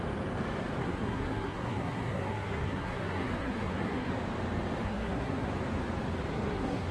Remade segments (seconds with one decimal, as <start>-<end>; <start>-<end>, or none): 0.8-4.1; 4.8-5.5; 6.3-6.9